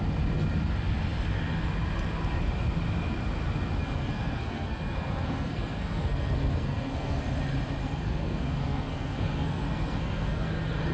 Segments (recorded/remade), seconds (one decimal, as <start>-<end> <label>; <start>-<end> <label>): 0.0-3.8 recorded; 3.8-7.2 remade; 7.2-7.8 recorded; 7.8-10.5 remade; 10.5-10.9 recorded